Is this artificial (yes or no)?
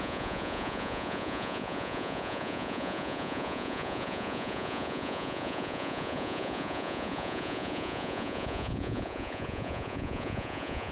yes